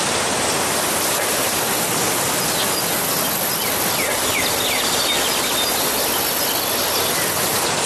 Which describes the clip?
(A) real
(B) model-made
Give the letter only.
A